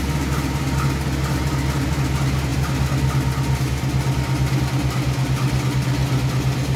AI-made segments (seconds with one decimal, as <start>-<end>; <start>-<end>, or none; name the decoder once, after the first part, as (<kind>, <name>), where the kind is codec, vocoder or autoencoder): none